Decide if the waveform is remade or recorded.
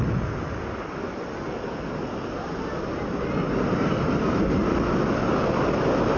recorded